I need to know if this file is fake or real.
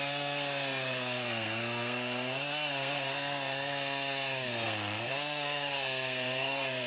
fake